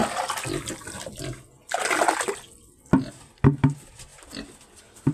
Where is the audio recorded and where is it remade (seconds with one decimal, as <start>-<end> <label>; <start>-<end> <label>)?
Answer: 0.0-5.1 recorded